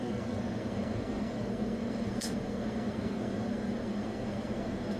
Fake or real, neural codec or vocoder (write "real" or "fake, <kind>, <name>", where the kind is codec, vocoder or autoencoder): fake, codec, SNAC